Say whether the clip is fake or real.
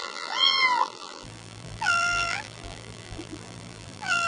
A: fake